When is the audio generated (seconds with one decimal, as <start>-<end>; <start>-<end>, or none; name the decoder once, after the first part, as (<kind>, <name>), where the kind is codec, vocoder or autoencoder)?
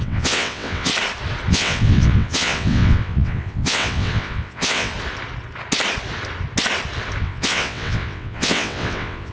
0.0-0.9 (vocoder, WaveNeXt); 1.5-4.9; 7.2-9.3